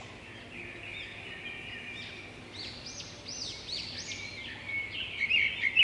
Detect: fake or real real